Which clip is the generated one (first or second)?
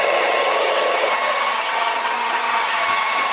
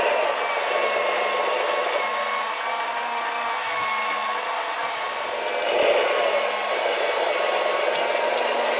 first